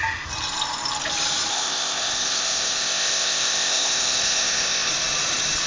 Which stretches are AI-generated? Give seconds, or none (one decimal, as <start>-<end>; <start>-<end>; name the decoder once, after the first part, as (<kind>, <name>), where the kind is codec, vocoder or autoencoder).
1.5-4.9 (codec, ZipCodec)